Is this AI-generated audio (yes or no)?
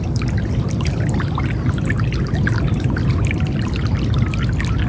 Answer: no